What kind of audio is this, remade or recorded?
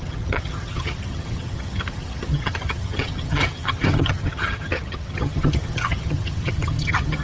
remade